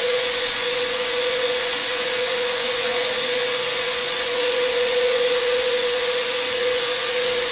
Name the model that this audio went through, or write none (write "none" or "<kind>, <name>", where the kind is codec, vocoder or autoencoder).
vocoder, Vocos